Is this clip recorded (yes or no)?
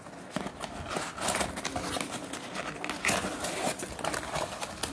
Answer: yes